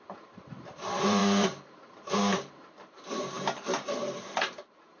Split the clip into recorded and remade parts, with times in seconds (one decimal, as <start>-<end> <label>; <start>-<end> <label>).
0.0-5.0 remade

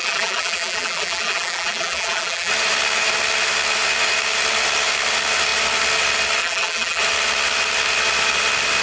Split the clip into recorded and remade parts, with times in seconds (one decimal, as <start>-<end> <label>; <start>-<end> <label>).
0.0-2.5 remade; 2.5-6.4 recorded; 6.4-7.0 remade; 7.0-8.8 recorded

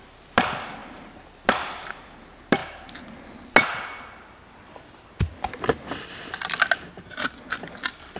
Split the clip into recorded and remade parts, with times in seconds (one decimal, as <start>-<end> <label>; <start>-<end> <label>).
0.0-2.6 remade; 2.6-5.6 recorded; 5.6-6.2 remade; 6.2-8.2 recorded

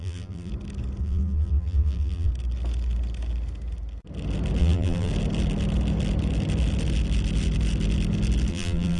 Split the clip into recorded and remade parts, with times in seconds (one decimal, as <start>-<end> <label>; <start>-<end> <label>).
0.0-0.5 remade; 0.5-1.0 recorded; 1.0-2.3 remade; 2.3-4.6 recorded; 4.6-5.1 remade; 5.1-8.5 recorded; 8.5-9.0 remade

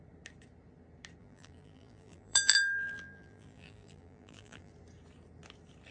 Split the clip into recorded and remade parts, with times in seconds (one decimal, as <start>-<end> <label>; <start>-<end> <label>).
0.0-1.2 recorded; 1.2-4.7 remade; 4.7-5.9 recorded

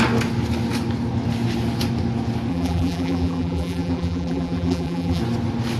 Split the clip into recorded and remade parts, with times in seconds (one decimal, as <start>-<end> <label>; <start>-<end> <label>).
0.0-2.5 recorded; 2.5-5.2 remade; 5.2-5.8 recorded

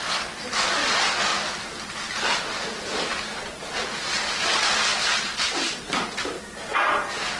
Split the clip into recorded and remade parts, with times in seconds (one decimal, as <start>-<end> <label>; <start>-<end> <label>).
0.0-7.4 recorded

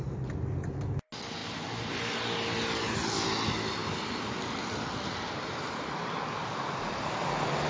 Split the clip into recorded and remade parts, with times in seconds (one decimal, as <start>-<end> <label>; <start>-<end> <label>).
0.0-1.4 recorded; 1.4-1.9 remade; 1.9-7.7 recorded